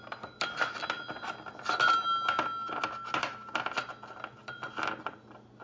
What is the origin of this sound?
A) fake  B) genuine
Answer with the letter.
B